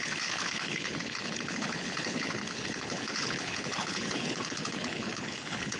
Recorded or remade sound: remade